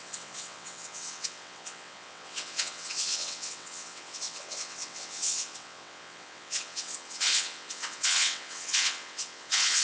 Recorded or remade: remade